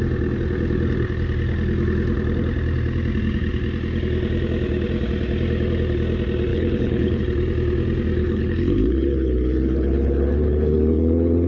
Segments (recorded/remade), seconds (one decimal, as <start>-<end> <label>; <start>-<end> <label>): 0.0-6.5 recorded; 6.5-7.2 remade; 7.2-8.2 recorded; 8.2-11.5 remade